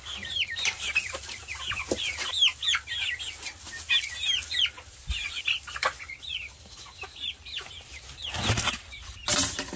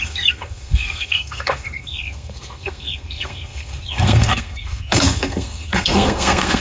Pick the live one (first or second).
first